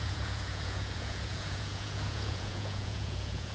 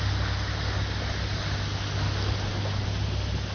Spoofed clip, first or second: first